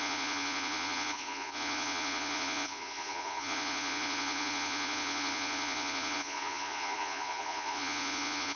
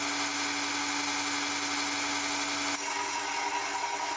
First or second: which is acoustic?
second